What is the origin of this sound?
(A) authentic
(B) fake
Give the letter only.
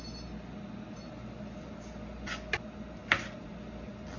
A